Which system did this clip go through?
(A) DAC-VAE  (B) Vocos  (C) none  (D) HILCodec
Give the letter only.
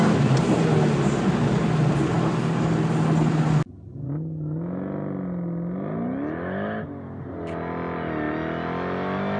C